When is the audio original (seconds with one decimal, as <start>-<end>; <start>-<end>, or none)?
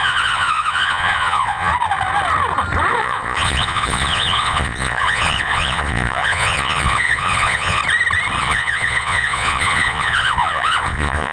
1.7-3.0; 7.8-8.4